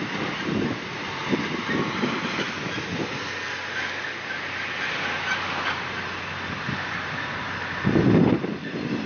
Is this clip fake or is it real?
real